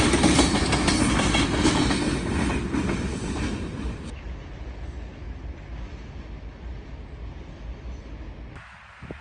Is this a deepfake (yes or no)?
no